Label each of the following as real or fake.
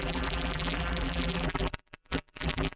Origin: fake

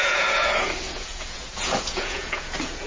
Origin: fake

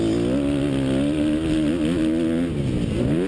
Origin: real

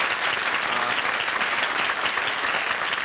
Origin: real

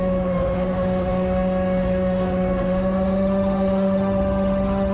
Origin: fake